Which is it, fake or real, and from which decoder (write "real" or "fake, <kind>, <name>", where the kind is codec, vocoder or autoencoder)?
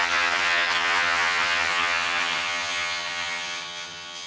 fake, vocoder, HiFi-GAN